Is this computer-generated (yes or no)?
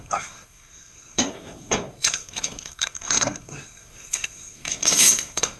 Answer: yes